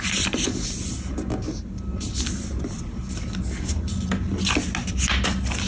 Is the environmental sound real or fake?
real